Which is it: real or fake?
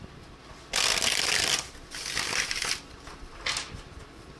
real